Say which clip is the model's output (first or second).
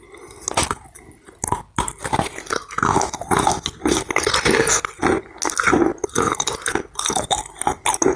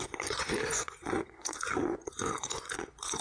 second